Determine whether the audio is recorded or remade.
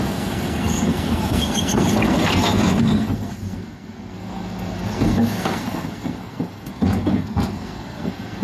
remade